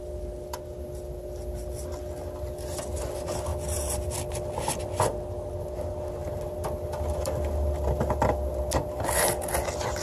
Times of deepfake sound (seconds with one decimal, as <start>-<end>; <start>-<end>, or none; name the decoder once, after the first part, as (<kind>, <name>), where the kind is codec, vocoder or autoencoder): none